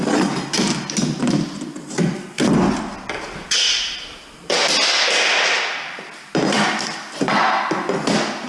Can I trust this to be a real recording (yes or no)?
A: yes